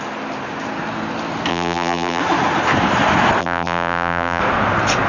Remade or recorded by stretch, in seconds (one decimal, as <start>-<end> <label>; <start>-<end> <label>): 0.0-1.5 recorded; 1.5-2.2 remade; 2.2-3.4 recorded; 3.4-4.4 remade; 4.4-5.1 recorded

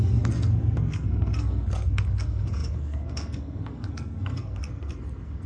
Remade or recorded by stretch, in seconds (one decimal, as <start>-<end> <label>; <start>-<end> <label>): 0.0-5.5 remade

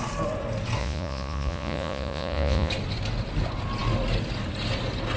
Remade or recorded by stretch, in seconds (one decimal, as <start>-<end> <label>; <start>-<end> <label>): 0.0-0.8 recorded; 0.8-2.7 remade; 2.7-5.2 recorded

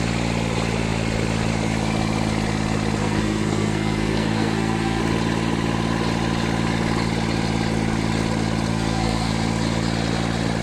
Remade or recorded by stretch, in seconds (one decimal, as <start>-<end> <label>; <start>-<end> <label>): 0.0-3.0 recorded; 3.0-5.0 remade; 5.0-8.7 recorded; 8.7-9.3 remade; 9.3-10.6 recorded

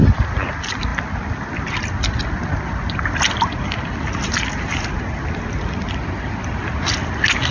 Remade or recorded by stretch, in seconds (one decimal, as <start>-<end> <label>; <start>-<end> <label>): 0.0-7.5 recorded